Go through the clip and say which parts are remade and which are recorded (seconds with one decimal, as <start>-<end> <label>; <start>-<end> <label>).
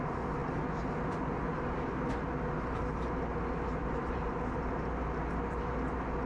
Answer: 0.0-3.8 recorded; 3.8-4.4 remade; 4.4-6.3 recorded